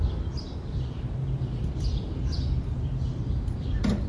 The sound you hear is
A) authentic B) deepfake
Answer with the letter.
A